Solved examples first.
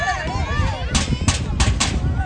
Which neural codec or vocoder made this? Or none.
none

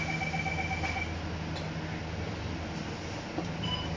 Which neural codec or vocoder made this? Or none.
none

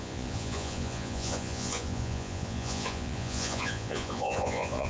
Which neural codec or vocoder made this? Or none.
vocoder, Vocos